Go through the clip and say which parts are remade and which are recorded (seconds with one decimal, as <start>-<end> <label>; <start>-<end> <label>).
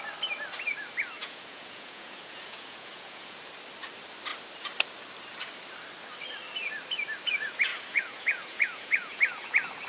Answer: 0.0-1.2 recorded; 1.2-3.4 remade; 3.4-7.7 recorded; 7.7-9.2 remade; 9.2-9.9 recorded